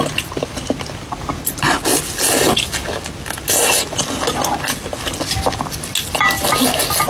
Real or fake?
real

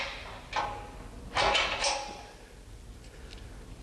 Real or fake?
real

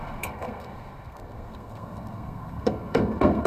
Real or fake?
fake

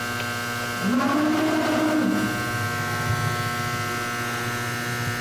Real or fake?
real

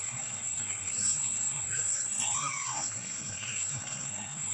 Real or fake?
fake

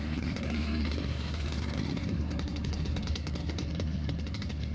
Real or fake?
fake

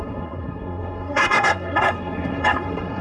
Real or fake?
fake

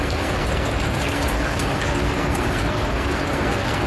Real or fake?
fake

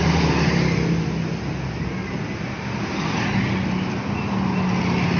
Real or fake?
real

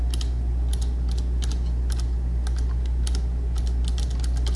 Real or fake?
real